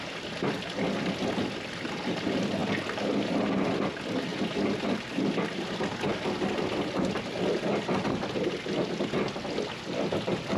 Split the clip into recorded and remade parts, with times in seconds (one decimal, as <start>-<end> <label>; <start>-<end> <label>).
0.0-2.6 recorded; 2.6-3.3 remade; 3.3-4.3 recorded; 4.3-5.1 remade; 5.1-10.6 recorded